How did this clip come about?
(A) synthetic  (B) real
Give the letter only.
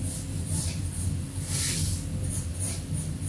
B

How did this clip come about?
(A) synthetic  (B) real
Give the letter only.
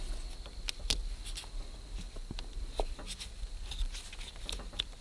B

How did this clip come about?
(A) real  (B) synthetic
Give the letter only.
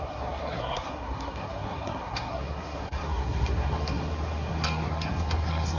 B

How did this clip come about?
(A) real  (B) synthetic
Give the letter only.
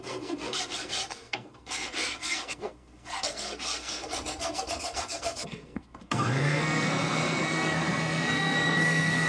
B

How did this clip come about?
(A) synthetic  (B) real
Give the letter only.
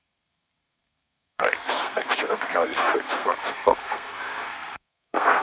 A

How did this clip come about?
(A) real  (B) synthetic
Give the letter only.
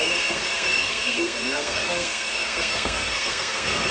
B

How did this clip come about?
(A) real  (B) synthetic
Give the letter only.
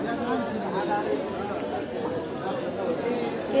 A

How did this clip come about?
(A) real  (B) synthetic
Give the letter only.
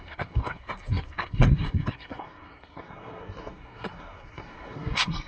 B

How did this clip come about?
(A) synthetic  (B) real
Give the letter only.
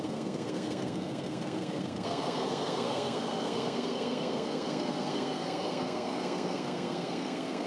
A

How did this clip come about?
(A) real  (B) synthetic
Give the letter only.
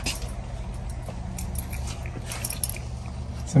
A